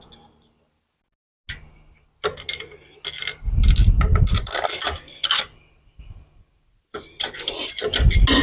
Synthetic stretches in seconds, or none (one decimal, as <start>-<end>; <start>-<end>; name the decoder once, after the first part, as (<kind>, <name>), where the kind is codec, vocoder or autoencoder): none